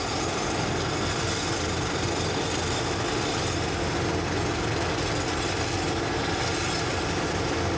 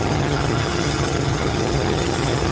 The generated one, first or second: second